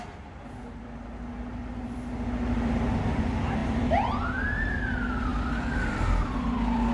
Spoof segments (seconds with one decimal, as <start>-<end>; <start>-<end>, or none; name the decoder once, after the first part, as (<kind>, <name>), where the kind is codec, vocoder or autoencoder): none